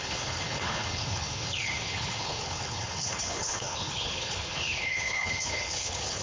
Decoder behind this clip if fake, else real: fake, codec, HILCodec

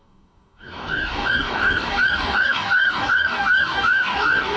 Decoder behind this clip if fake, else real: fake, codec, DAC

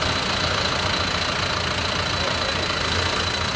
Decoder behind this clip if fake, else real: real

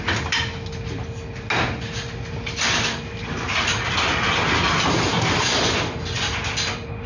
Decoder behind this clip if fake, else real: real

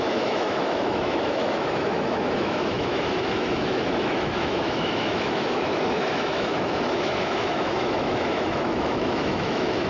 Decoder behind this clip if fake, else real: fake, autoencoder, DAC-VAE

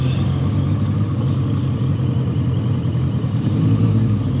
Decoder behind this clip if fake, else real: real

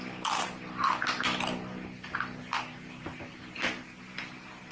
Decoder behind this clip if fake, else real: real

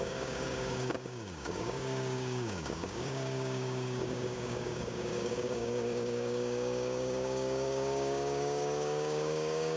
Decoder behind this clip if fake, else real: fake, codec, DAC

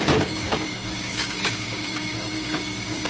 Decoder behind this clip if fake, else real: fake, codec, DAC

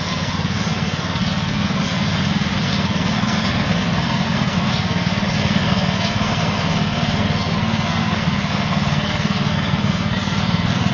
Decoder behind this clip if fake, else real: fake, codec, SNAC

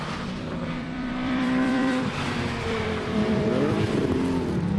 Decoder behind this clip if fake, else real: fake, vocoder, BigVGAN v2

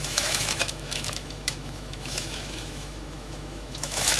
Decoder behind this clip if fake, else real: fake, autoencoder, DAC-VAE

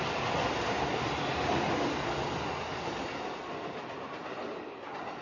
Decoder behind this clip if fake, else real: real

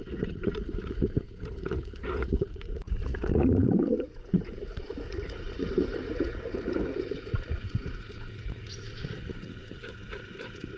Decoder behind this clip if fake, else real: fake, vocoder, Vocos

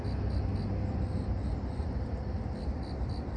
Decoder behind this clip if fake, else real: real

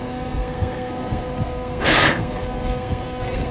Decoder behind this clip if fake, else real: fake, codec, SNAC